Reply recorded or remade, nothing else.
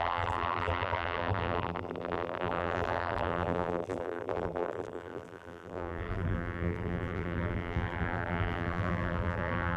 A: remade